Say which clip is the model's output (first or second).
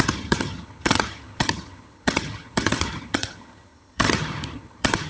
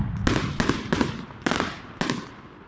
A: first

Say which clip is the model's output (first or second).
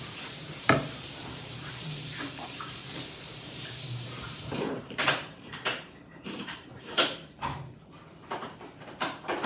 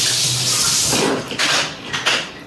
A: first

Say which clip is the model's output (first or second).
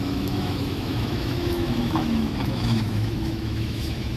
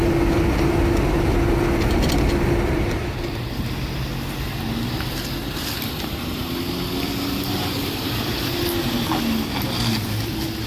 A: first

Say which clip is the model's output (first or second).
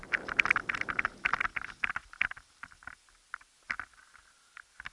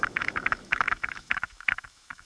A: second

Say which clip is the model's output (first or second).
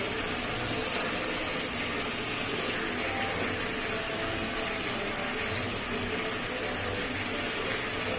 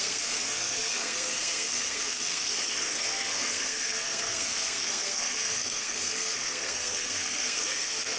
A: second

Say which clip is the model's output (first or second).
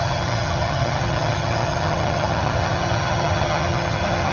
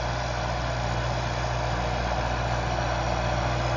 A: first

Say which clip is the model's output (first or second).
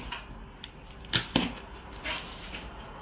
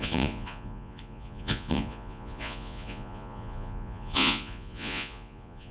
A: second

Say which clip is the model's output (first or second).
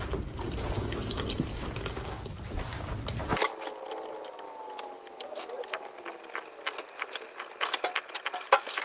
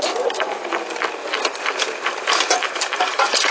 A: second